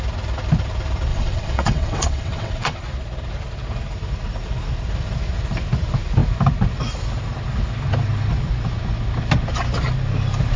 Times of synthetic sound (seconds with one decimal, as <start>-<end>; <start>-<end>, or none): 1.1-2.8